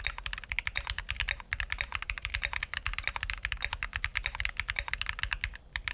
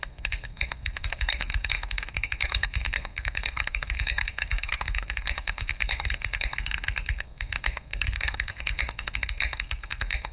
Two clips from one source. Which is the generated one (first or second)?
second